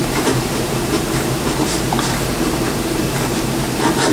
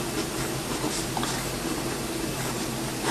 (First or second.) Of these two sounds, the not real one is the first